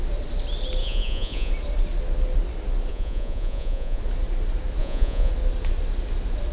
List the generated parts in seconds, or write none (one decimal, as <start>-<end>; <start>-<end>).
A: 0.8-1.5; 2.9-4.0; 4.8-5.3